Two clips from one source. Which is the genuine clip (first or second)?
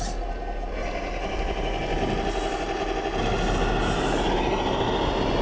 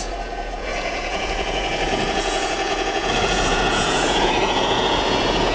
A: first